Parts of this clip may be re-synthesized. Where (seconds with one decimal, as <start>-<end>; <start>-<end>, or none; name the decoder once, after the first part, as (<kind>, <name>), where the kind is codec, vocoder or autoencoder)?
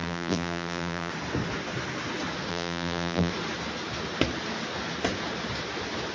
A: 0.0-1.1 (vocoder, BigVGAN v2); 2.5-3.3